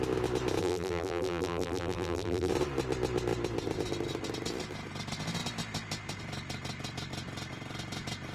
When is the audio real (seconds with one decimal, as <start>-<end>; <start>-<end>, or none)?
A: 0.0-0.6; 2.5-8.3